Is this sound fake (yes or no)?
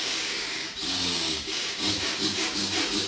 yes